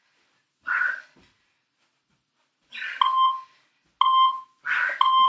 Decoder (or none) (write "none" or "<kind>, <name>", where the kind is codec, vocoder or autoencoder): none